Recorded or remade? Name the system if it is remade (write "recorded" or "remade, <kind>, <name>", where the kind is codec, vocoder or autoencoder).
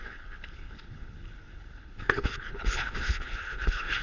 remade, codec, HILCodec